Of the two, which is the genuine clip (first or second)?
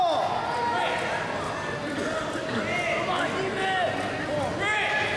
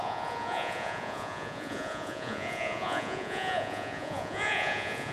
first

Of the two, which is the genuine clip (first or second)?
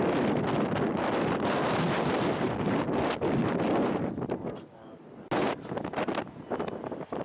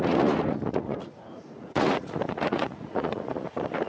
first